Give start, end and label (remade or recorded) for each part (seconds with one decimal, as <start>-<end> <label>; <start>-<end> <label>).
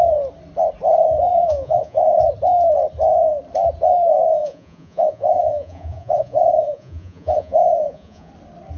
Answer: 0.0-1.3 recorded; 1.3-2.2 remade; 2.2-4.4 recorded; 4.4-8.3 remade; 8.3-8.8 recorded